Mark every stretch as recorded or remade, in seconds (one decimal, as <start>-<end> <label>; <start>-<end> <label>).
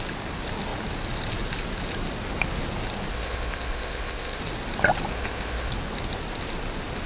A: 0.0-3.1 recorded; 3.1-4.4 remade; 4.4-5.1 recorded; 5.1-5.7 remade; 5.7-7.1 recorded